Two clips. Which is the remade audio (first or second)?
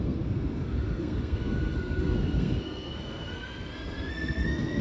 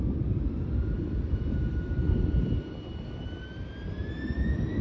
first